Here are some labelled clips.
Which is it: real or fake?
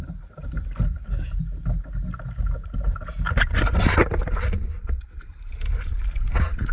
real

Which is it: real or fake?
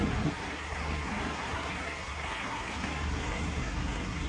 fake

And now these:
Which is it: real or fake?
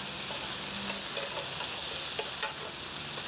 real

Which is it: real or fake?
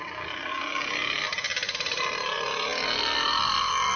real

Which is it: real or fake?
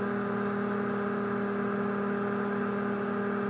real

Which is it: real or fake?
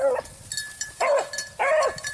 real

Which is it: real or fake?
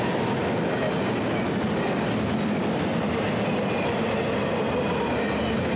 real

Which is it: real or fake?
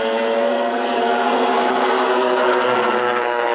fake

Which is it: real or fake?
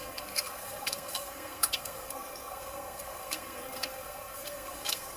fake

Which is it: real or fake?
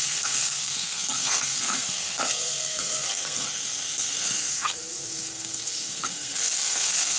fake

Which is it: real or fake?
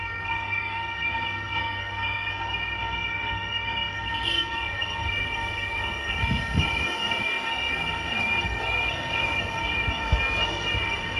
fake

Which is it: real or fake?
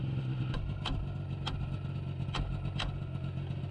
real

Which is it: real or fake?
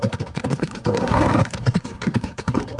fake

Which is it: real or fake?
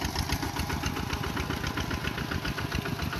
real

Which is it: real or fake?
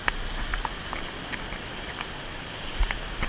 real